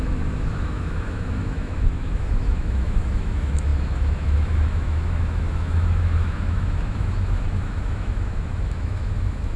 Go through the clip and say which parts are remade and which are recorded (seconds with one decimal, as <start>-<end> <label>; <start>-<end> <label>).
0.0-9.6 remade